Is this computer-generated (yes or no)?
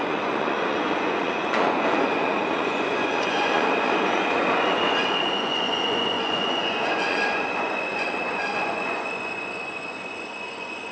yes